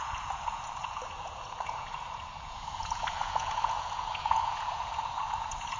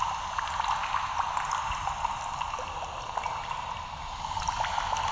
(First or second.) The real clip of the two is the second